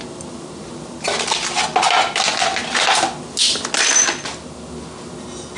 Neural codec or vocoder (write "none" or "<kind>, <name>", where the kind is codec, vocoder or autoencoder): none